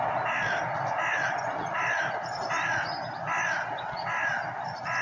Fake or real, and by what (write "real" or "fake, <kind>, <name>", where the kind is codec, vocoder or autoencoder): real